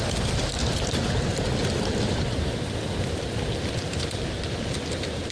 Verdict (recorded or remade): recorded